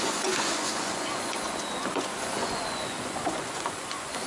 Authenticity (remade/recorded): remade